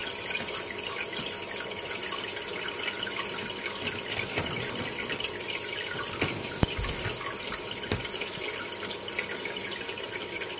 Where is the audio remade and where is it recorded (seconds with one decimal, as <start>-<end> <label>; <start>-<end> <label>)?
0.0-10.6 recorded